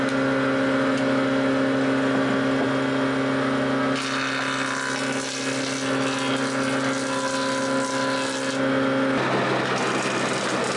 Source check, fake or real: real